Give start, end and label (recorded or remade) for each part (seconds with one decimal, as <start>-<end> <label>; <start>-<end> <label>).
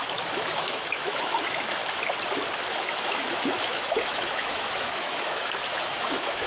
0.0-1.8 remade; 1.8-2.7 recorded; 2.7-6.5 remade